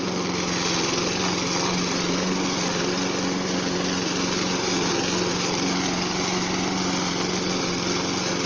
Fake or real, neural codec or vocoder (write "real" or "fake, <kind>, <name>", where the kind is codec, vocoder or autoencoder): real